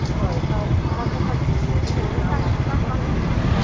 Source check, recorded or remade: recorded